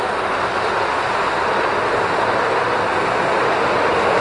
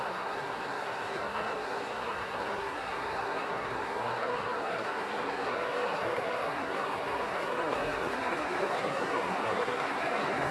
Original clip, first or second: first